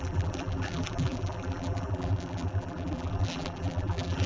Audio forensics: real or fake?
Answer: fake